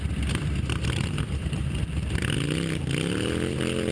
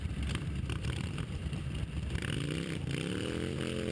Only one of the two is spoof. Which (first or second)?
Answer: second